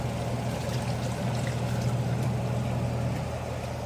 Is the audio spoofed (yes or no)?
no